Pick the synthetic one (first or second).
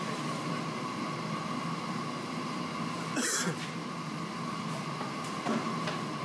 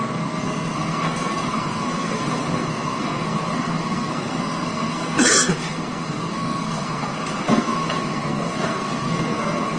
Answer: second